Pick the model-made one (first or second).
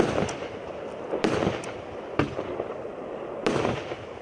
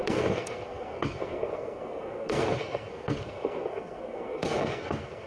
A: second